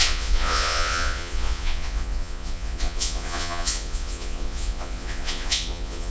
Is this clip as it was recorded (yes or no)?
no